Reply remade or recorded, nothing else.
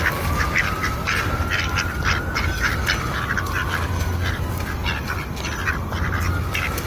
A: recorded